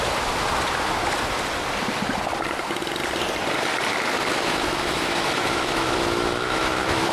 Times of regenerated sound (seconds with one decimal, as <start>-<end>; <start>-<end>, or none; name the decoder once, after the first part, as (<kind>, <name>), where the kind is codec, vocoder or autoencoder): 3.9-7.1 (autoencoder, DAC-VAE)